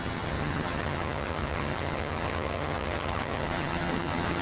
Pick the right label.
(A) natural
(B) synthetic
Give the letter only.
B